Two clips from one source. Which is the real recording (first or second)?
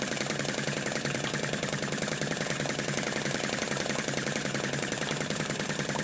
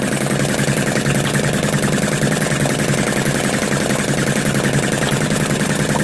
second